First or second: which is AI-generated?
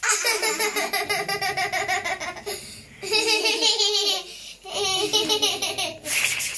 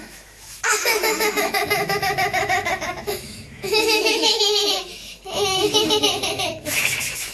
second